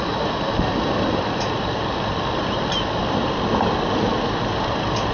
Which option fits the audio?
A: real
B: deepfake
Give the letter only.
A